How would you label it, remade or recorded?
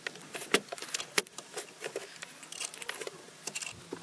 recorded